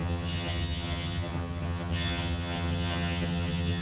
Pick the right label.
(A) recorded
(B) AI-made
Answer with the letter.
B